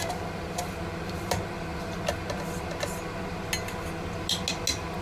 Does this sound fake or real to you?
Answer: real